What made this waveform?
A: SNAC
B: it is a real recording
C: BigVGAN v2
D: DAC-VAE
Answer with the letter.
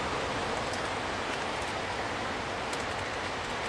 C